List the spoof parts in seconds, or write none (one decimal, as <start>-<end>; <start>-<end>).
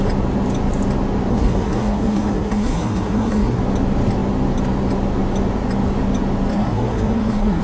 1.3-3.6; 6.5-7.6